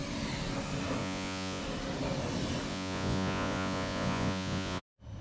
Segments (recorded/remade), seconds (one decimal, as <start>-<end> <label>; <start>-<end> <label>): 0.0-1.0 recorded; 1.0-1.6 remade; 1.6-2.7 recorded; 2.7-4.8 remade; 4.8-5.2 recorded